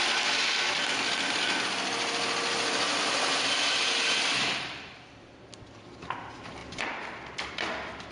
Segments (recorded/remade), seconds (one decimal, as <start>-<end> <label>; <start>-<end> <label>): 0.0-8.1 recorded